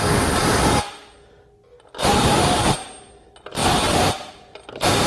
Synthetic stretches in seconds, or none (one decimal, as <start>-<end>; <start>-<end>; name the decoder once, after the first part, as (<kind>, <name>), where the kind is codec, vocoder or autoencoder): none